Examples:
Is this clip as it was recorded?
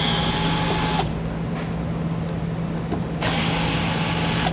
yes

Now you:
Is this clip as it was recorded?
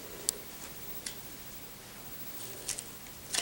yes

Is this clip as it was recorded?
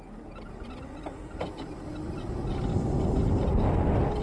yes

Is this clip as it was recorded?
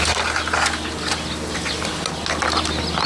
yes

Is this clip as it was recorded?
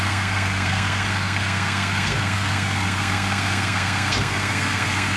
no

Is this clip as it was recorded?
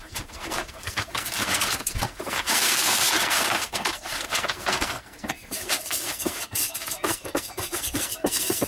no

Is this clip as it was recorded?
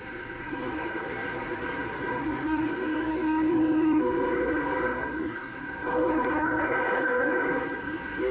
no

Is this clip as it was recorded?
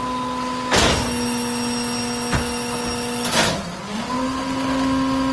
yes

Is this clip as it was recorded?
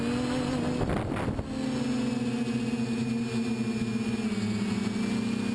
yes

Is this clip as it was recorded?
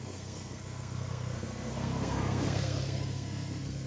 no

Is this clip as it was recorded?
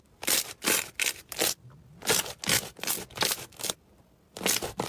yes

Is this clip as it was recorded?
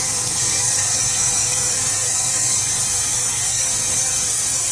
no